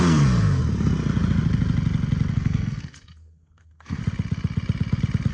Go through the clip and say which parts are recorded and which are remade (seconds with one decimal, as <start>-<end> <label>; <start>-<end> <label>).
0.0-0.6 remade; 0.6-2.3 recorded; 2.3-4.0 remade; 4.0-5.3 recorded